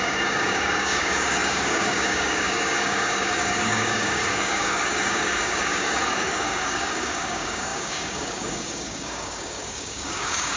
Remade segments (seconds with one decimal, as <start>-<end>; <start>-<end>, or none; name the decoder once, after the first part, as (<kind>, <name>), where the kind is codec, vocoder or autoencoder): 0.0-10.6 (codec, DAC)